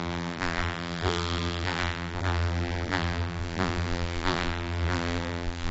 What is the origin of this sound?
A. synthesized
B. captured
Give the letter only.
A